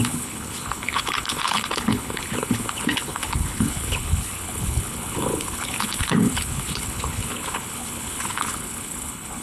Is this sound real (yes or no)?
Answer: no